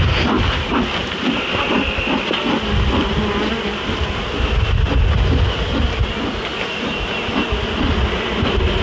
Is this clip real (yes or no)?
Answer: yes